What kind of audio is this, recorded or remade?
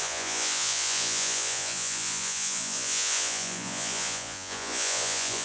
remade